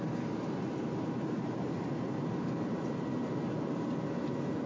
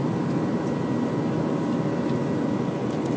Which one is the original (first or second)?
second